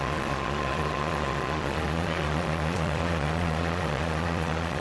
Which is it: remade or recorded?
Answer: remade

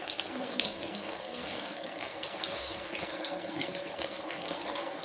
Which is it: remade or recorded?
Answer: remade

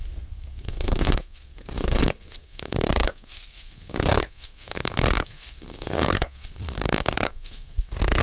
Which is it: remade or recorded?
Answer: remade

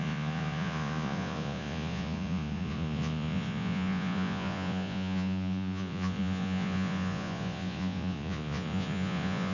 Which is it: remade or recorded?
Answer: remade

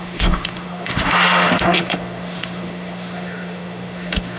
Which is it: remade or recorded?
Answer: remade